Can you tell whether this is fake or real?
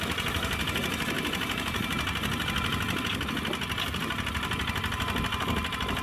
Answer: real